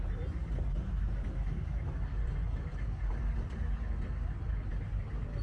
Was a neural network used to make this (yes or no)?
no